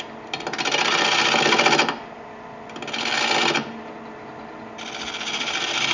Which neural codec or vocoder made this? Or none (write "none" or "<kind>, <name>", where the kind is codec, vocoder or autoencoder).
none